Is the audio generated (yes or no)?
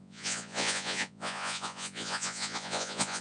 yes